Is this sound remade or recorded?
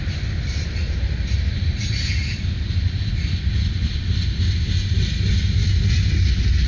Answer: recorded